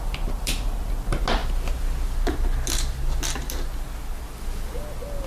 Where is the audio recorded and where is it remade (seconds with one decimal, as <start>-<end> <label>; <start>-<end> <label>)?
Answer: 0.0-5.3 recorded